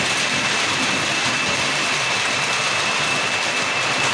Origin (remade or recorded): recorded